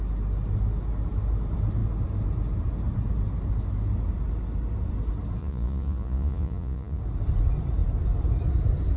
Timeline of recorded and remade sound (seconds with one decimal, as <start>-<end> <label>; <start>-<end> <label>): 0.0-5.4 recorded; 5.4-7.0 remade; 7.0-9.0 recorded